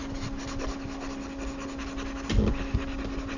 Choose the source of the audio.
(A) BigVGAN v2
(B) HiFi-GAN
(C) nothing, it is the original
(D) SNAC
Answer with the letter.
C